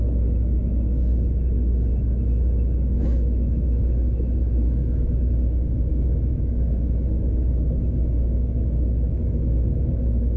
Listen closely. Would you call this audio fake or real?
fake